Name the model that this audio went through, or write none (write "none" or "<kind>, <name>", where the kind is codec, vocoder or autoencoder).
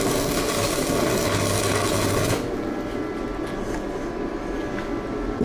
none